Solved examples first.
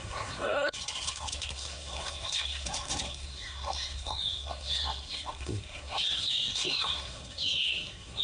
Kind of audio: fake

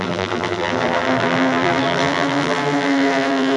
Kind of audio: fake